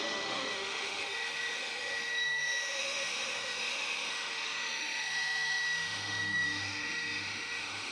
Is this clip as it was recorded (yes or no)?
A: no